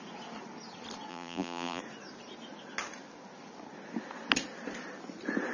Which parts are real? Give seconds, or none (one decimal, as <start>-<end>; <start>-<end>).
0.0-1.1; 1.8-5.5